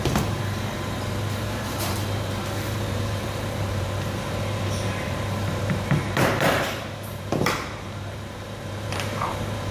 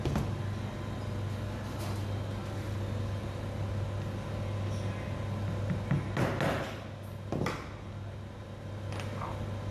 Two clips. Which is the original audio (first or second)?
second